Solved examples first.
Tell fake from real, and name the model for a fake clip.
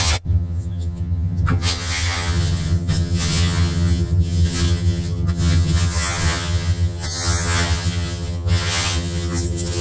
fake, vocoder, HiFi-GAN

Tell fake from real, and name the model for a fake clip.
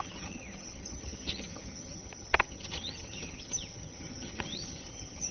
fake, vocoder, HiFi-GAN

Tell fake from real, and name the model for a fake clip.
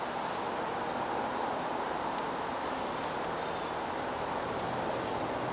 real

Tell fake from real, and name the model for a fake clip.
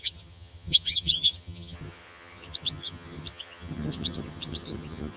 fake, vocoder, HiFi-GAN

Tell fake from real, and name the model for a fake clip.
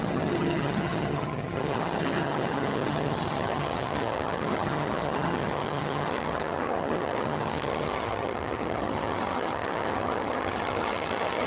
fake, vocoder, HiFi-GAN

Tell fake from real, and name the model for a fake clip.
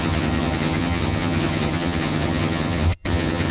fake, vocoder, HiFi-GAN